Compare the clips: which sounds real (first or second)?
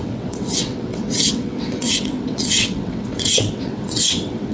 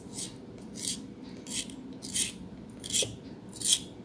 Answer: second